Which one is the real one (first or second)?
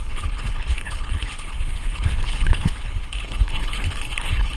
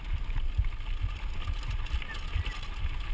second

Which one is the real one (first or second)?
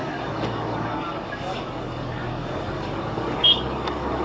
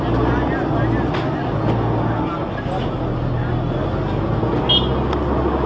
second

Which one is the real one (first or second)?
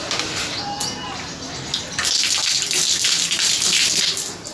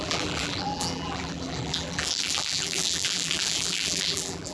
first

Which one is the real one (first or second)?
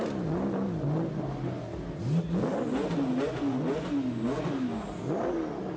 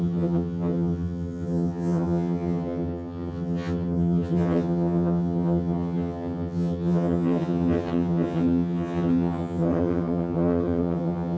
first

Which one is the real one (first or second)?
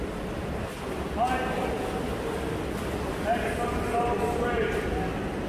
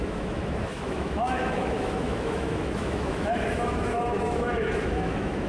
first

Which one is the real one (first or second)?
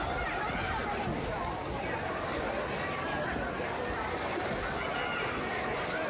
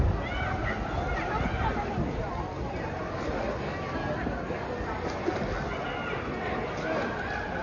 second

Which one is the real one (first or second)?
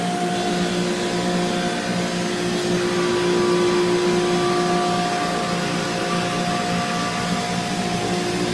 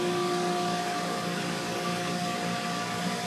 first